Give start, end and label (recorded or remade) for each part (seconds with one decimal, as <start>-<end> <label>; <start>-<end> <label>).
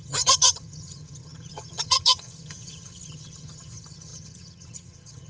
0.0-5.3 remade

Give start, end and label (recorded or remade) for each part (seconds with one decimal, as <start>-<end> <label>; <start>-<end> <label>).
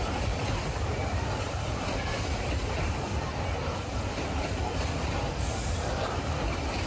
0.0-3.1 remade; 3.1-3.9 recorded; 3.9-6.9 remade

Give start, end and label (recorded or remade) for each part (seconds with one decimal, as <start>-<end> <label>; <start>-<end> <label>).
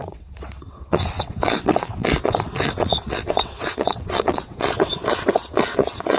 0.0-6.2 remade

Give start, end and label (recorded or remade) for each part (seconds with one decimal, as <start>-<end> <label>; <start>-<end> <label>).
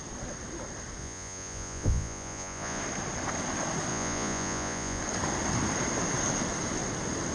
0.0-1.0 recorded; 1.0-2.8 remade; 2.8-3.9 recorded; 3.9-5.0 remade; 5.0-7.3 recorded